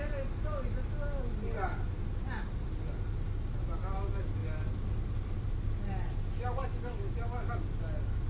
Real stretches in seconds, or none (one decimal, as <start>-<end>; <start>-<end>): 0.0-8.3